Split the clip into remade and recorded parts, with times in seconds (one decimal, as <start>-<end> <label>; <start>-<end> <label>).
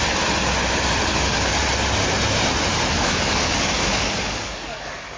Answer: 0.0-1.1 recorded; 1.1-1.5 remade; 1.5-2.9 recorded; 2.9-5.2 remade